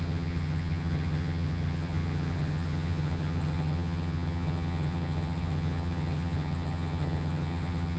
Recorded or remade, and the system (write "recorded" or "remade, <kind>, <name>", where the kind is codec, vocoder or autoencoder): remade, vocoder, HiFi-GAN